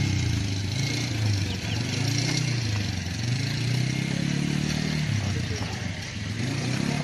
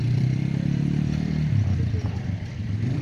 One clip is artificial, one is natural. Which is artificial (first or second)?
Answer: second